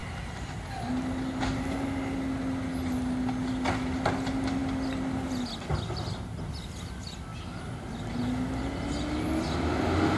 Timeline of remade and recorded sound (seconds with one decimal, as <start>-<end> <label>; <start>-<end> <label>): 0.0-10.2 recorded